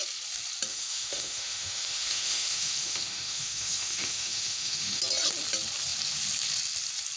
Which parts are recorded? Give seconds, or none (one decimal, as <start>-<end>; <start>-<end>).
0.0-0.7; 5.0-7.2